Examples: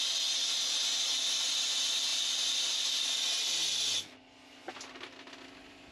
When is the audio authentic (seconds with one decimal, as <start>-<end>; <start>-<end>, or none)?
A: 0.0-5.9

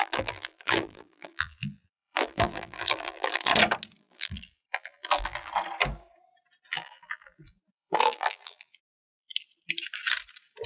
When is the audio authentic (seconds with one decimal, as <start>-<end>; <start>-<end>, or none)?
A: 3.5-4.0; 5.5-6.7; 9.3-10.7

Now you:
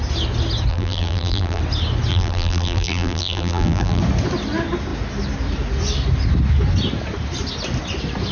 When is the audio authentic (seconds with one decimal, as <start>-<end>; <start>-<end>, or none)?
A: 0.0-0.7; 1.6-2.1; 4.0-8.3